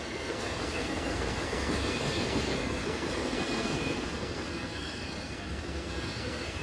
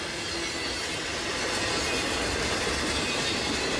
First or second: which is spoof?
first